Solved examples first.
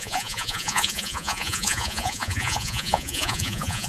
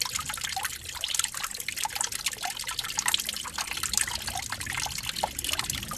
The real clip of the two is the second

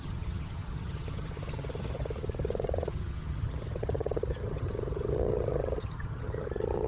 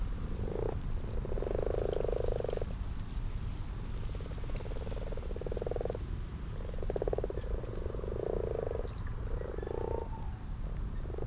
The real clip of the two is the second